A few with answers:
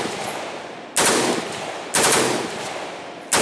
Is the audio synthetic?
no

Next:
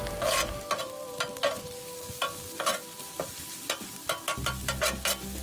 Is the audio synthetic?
no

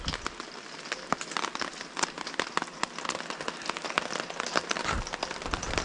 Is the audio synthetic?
no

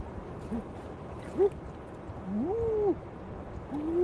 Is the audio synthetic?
no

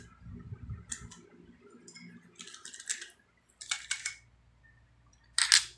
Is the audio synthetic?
no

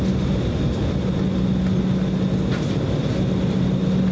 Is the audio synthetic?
no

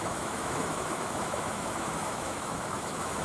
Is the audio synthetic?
yes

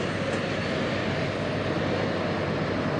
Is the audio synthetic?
no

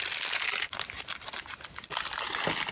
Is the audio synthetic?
no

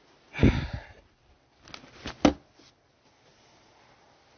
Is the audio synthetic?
no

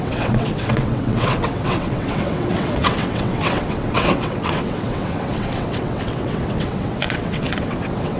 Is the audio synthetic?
yes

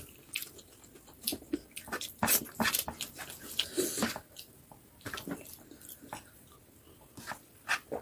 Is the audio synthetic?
no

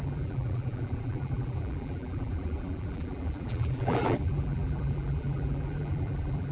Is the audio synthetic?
yes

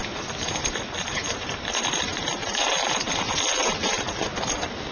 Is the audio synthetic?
no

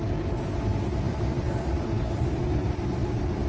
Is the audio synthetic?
no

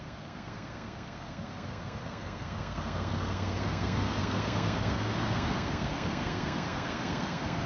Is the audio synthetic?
yes